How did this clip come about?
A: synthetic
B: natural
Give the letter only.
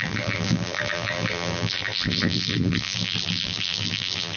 A